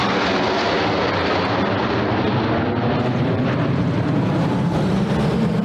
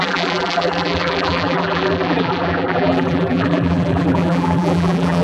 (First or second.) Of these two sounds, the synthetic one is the second